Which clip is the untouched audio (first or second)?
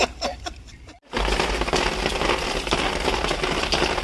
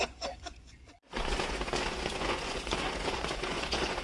first